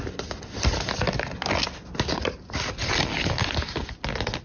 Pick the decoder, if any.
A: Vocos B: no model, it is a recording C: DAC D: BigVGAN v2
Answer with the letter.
B